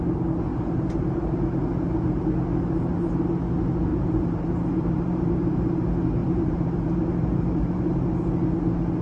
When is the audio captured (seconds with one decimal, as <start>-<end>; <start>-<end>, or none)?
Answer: 0.0-0.5; 2.2-3.9; 5.7-6.2; 7.8-9.0